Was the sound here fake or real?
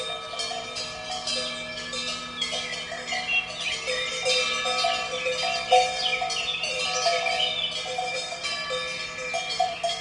real